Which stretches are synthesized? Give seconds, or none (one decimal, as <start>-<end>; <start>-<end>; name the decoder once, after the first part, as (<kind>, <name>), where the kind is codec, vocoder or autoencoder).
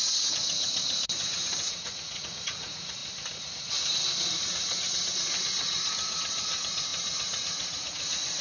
0.0-3.0 (vocoder, Vocos); 4.3-8.4